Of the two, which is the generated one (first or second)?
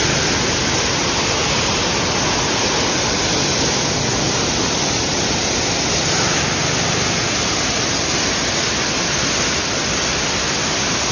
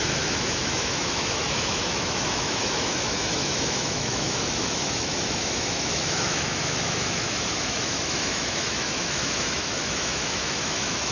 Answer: second